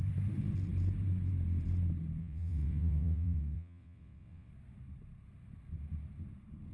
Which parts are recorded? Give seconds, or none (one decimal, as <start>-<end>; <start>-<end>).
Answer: 0.0-2.2; 4.5-6.7